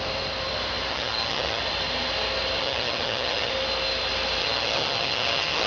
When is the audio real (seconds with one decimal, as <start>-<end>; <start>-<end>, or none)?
0.0-0.9; 1.6-2.6; 3.5-4.4